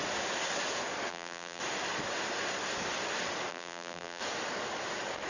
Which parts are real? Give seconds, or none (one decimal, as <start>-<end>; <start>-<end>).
0.0-1.1; 1.6-3.5; 4.2-5.3